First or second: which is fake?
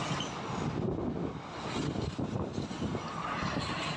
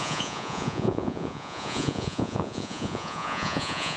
second